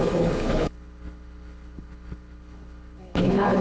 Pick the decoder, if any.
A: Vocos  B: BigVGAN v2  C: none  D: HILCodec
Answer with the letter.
D